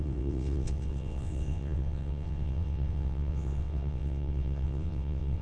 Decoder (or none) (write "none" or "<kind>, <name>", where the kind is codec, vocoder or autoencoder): vocoder, WaveNeXt